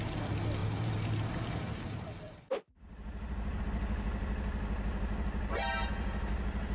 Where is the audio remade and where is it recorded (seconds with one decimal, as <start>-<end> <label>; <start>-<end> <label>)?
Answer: 0.0-0.6 recorded; 0.6-3.6 remade; 3.6-6.7 recorded

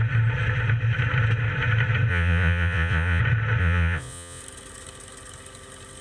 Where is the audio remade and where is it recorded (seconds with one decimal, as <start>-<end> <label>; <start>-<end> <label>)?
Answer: 0.0-2.1 recorded; 2.1-3.2 remade; 3.2-3.6 recorded; 3.6-4.4 remade; 4.4-6.0 recorded

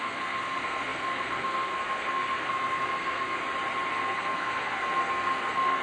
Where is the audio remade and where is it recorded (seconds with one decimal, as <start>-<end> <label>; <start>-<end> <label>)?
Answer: 0.0-3.4 remade; 3.4-3.9 recorded; 3.9-5.8 remade